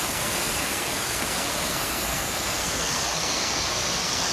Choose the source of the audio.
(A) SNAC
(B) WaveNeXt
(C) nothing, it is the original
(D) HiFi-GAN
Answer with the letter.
A